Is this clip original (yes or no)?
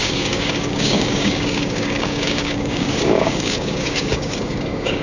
no